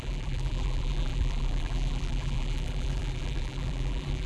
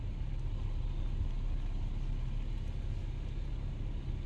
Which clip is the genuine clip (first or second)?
second